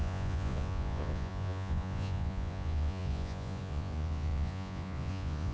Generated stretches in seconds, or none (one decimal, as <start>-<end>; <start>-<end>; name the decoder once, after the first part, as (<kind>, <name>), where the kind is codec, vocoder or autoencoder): 0.0-5.5 (vocoder, Vocos)